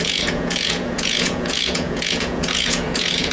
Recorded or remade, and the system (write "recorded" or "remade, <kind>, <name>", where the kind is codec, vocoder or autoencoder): remade, vocoder, Vocos